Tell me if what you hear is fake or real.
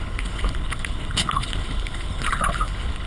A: fake